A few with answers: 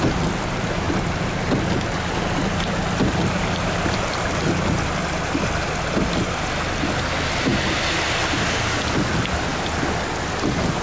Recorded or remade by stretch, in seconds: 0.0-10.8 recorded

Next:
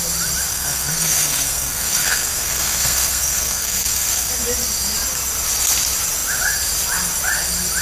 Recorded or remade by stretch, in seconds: 0.0-0.5 recorded; 0.5-4.3 remade; 4.3-7.8 recorded

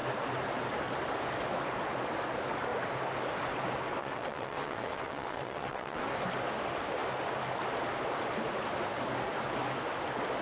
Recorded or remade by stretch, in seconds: 0.0-4.0 recorded; 4.0-6.0 remade; 6.0-10.4 recorded